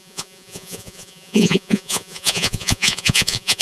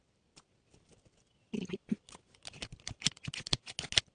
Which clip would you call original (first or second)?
second